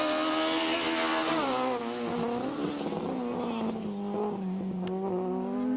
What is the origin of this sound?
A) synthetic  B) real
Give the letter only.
B